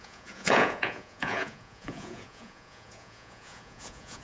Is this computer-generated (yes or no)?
yes